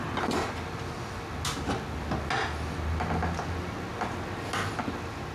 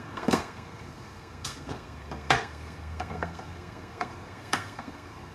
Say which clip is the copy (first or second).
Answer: second